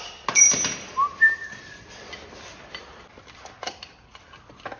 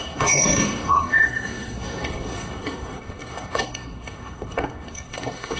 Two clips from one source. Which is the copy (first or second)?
second